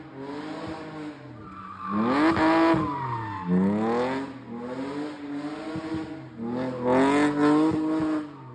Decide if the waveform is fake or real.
real